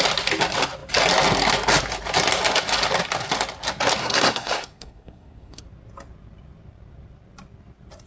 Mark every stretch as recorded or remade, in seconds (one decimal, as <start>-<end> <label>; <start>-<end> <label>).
0.0-4.0 recorded; 4.0-5.6 remade; 5.6-8.1 recorded